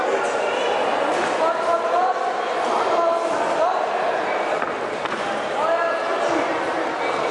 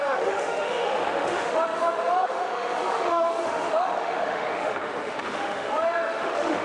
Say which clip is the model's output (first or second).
second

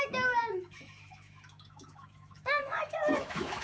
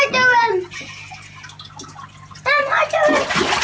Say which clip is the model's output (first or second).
first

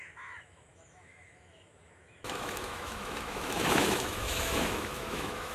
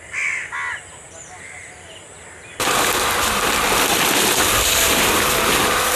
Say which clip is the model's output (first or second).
first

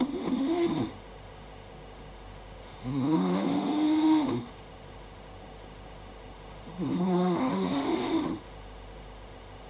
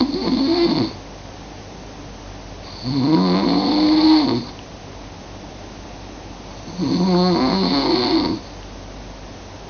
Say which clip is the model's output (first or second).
first